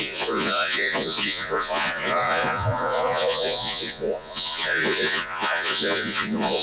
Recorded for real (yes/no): no